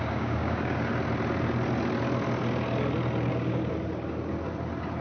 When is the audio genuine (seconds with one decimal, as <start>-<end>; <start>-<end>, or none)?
0.9-3.3; 3.7-5.0

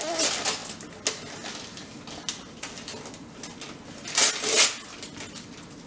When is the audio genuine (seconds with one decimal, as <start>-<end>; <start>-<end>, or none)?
0.0-5.9

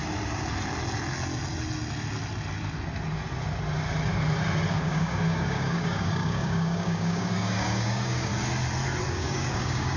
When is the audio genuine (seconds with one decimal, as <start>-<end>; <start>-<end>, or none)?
0.0-4.7; 8.3-9.1